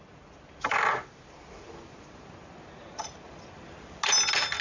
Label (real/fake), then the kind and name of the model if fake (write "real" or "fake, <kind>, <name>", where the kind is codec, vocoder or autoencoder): real